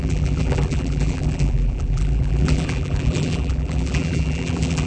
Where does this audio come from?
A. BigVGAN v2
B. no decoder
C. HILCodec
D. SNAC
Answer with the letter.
A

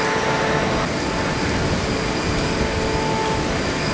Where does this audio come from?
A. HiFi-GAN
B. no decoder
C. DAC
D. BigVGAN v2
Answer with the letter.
B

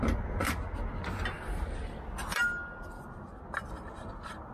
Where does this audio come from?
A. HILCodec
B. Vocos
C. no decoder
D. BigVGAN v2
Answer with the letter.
C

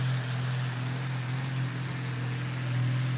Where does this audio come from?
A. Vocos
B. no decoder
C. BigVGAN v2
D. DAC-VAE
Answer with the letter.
B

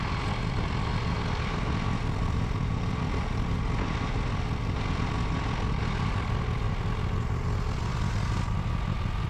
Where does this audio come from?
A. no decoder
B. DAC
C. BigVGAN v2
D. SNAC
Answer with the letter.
A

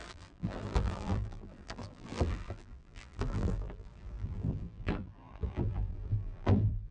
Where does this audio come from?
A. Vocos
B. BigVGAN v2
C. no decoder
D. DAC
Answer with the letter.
B